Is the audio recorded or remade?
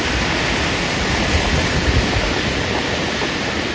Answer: recorded